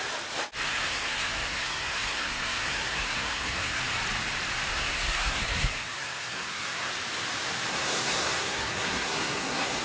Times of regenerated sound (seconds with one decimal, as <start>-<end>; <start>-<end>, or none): 0.7-3.8; 4.7-6.9; 7.7-9.8